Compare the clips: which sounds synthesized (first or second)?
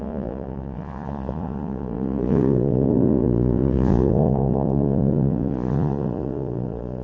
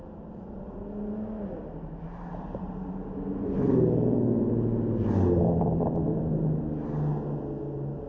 first